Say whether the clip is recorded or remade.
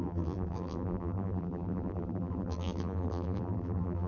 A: remade